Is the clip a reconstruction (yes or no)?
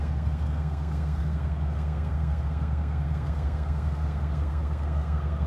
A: yes